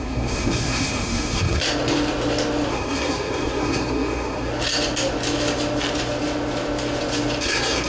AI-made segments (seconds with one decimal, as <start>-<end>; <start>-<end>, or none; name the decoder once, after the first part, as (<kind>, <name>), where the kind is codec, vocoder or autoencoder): 0.0-1.6 (codec, SNAC); 2.7-4.5; 7.4-7.9